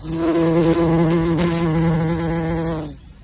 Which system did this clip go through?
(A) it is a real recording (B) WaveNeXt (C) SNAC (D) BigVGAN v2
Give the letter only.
A